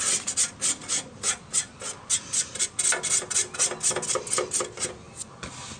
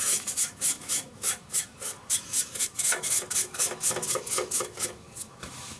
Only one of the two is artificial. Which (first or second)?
second